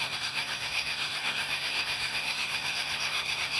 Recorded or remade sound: remade